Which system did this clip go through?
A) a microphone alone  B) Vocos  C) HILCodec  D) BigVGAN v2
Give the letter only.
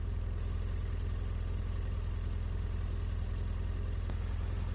A